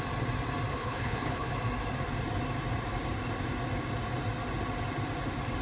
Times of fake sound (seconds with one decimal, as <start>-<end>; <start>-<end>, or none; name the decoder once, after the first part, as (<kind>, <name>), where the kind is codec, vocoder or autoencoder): 0.7-1.5 (codec, HILCodec)